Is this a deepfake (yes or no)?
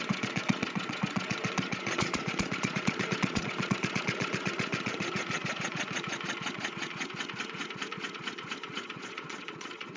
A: yes